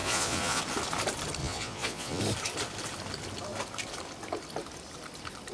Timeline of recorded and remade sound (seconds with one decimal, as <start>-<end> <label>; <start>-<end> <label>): 0.0-0.6 remade; 0.6-1.4 recorded; 1.4-2.2 remade; 2.2-5.5 recorded